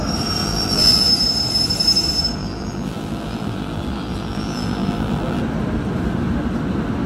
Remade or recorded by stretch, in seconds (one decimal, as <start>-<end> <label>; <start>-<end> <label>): 0.0-0.4 recorded; 0.4-1.1 remade; 1.1-2.4 recorded; 2.4-5.4 remade; 5.4-7.1 recorded